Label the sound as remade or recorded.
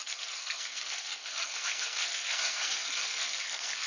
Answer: remade